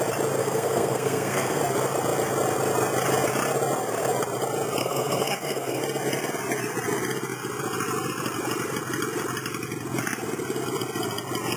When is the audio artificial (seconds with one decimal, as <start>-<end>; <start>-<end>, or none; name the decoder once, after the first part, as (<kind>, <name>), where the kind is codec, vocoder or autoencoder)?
0.4-1.6 (codec, SNAC); 4.8-5.8